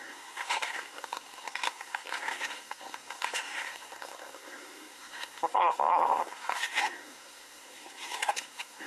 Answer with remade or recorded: remade